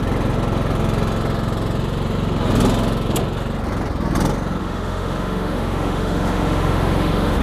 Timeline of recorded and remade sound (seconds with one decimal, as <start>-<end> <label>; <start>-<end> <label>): 0.0-4.6 recorded; 4.6-7.4 remade